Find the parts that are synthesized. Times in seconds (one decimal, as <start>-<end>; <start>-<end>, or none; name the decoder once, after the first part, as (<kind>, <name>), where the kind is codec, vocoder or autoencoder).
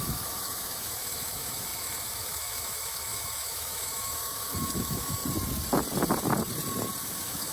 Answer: 0.0-5.2 (autoencoder, DAC-VAE); 7.0-7.5